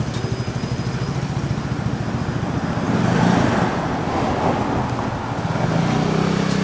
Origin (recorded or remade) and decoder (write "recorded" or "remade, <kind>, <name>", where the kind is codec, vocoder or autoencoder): recorded